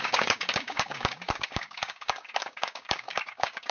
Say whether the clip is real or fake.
fake